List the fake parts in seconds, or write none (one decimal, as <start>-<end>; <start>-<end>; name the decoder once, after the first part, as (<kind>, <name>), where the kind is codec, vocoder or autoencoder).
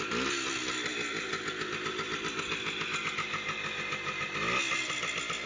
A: none